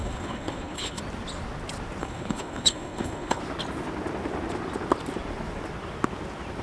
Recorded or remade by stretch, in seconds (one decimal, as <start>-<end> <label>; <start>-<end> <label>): 0.0-1.0 remade; 1.0-2.0 recorded; 2.0-3.4 remade; 3.4-6.6 recorded